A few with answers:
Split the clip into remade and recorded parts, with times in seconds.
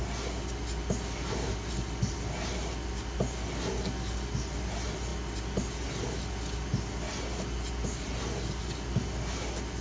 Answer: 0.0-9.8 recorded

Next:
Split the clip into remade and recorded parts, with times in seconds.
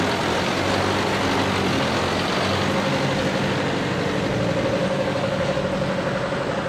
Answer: 0.0-4.8 recorded; 4.8-5.6 remade; 5.6-6.7 recorded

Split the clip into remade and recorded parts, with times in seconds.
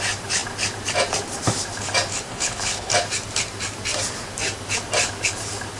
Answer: 0.0-2.3 recorded; 2.3-2.9 remade; 2.9-5.8 recorded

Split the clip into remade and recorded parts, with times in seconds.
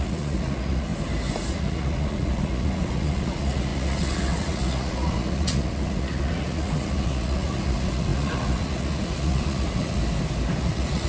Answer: 0.0-0.9 remade; 0.9-1.5 recorded; 1.5-10.0 remade; 10.0-10.6 recorded; 10.6-11.1 remade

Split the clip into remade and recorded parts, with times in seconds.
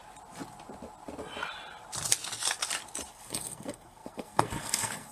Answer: 0.0-3.1 recorded; 3.1-5.1 remade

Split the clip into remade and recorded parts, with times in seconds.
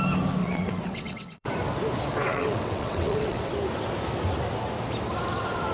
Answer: 0.0-0.4 recorded; 0.4-1.5 remade; 1.5-2.1 recorded; 2.1-3.5 remade; 3.5-5.7 recorded